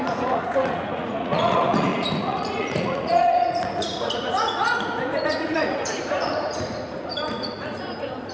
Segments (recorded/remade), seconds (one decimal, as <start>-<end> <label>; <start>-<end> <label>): 0.0-8.3 remade